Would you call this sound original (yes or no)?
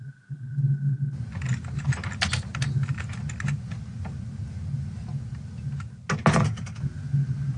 yes